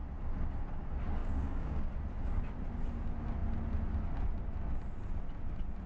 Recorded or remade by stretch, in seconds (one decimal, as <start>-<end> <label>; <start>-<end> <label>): 0.0-1.2 recorded; 1.2-1.9 remade; 1.9-5.9 recorded